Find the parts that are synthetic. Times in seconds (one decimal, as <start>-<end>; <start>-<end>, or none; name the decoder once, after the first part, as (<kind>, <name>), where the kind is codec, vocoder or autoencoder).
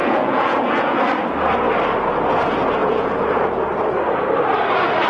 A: 0.0-1.0 (vocoder, Vocos); 2.8-3.5